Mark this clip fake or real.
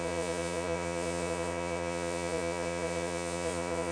fake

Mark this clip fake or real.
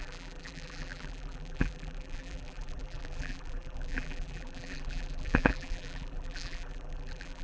fake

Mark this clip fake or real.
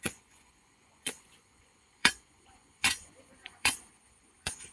fake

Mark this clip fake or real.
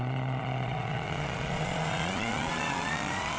fake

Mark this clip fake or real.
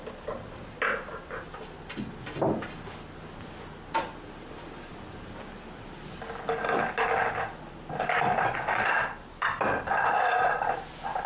real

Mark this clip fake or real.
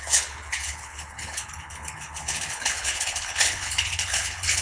fake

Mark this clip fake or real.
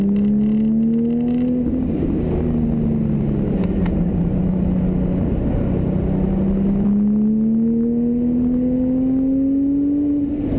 real